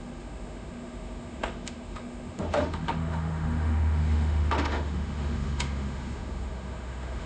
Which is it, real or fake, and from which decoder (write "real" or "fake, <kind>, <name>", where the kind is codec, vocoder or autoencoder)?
fake, autoencoder, DAC-VAE